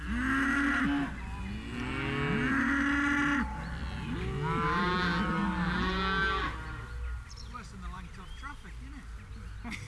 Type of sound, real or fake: real